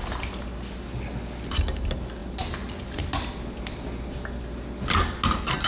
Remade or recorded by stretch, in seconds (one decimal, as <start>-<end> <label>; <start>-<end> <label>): 0.0-5.7 recorded